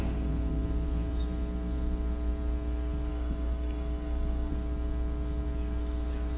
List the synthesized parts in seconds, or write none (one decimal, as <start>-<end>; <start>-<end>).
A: 3.1-4.5